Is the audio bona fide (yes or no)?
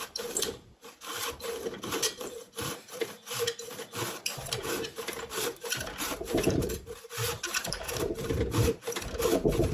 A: no